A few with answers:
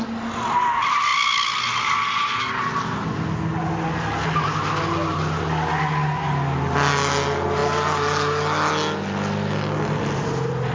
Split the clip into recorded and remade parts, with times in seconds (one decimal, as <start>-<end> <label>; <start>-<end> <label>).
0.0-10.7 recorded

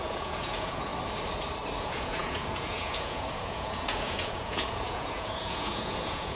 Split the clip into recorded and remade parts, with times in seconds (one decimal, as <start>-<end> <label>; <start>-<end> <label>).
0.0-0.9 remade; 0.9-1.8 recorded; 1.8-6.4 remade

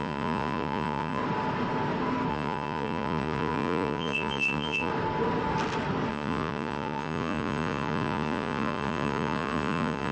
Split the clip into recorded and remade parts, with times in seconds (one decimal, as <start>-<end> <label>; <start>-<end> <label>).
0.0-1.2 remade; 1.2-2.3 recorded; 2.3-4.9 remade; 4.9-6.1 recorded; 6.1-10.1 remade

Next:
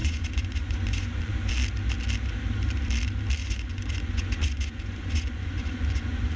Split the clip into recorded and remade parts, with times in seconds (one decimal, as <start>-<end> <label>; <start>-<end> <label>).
0.0-1.5 remade; 1.5-3.4 recorded; 3.4-6.4 remade

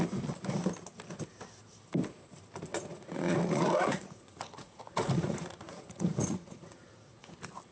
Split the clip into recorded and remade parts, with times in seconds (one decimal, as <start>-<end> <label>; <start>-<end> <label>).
0.0-2.7 recorded; 2.7-7.3 remade; 7.3-7.7 recorded

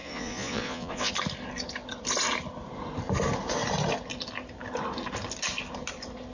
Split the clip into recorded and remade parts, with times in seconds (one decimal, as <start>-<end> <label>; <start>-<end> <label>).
0.0-1.1 remade; 1.1-6.3 recorded